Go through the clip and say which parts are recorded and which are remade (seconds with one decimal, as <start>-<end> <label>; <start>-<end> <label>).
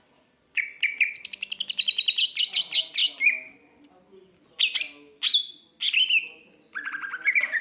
0.0-7.6 recorded